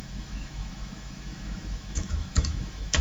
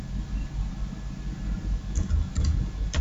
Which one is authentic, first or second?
second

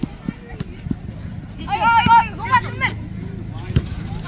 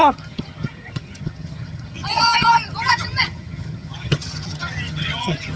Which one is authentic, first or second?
first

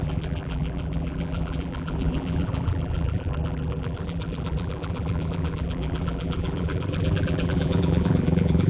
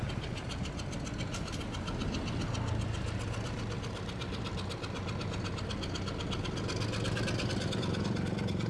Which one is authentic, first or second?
second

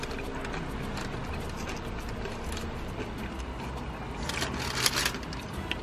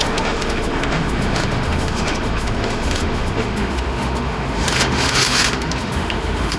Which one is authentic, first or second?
first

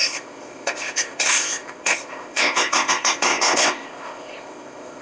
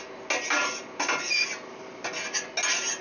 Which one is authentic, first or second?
second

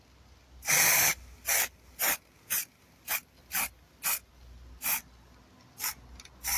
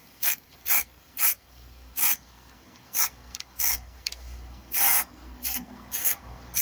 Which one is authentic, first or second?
first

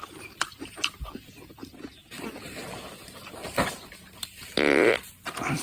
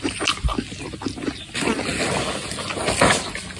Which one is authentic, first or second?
second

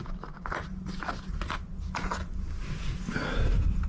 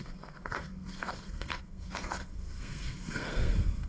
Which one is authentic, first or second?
first